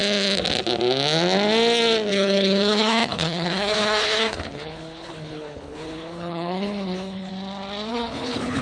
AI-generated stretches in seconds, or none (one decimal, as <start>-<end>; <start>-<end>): 2.1-7.3; 7.9-8.6